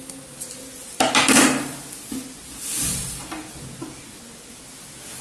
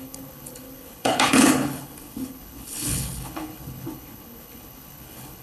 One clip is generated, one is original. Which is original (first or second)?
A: first